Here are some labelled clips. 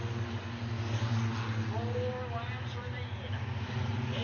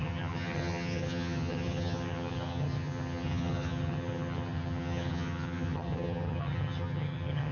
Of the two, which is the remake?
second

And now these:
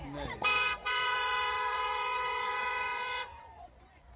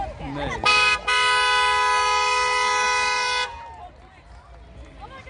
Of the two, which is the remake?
first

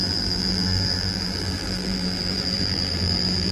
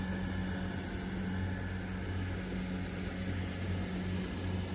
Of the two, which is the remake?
first